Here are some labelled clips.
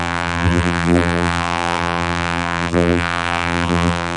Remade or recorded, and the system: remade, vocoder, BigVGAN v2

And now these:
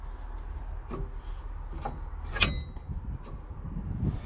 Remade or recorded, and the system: recorded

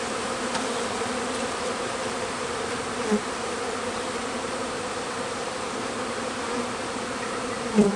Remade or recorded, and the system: remade, vocoder, BigVGAN v2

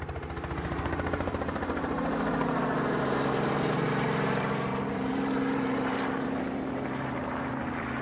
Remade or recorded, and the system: remade, vocoder, BigVGAN v2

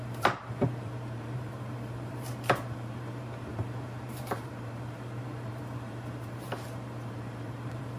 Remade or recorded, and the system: remade, vocoder, BigVGAN v2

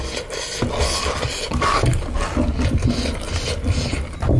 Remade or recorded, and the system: remade, vocoder, BigVGAN v2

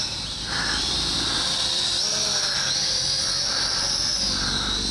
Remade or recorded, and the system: remade, vocoder, BigVGAN v2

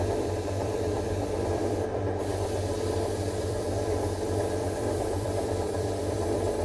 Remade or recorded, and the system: remade, vocoder, BigVGAN v2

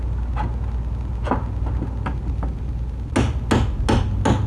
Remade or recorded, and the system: recorded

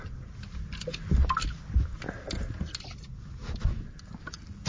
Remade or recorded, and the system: recorded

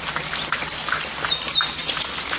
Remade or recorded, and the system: recorded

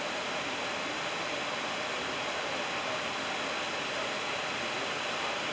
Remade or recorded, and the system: recorded